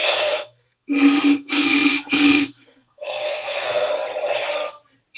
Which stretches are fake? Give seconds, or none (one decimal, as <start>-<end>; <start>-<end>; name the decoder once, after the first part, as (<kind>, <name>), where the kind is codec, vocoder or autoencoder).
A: 0.0-3.9 (codec, SNAC)